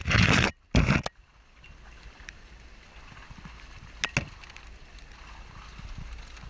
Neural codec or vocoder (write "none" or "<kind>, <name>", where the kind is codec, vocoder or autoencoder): none